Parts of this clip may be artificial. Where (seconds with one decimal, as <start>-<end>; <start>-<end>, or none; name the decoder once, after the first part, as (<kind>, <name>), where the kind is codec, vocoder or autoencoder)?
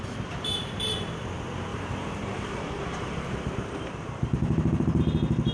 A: 1.7-5.0 (vocoder, BigVGAN v2)